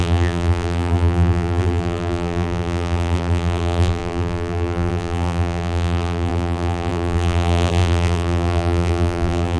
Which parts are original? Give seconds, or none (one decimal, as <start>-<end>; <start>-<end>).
none